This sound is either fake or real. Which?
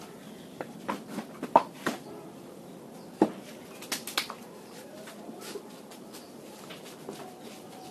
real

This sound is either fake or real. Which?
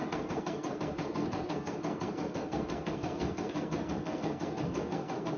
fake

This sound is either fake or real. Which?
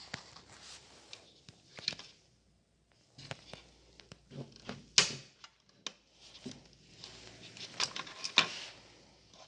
real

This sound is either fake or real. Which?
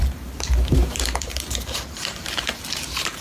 fake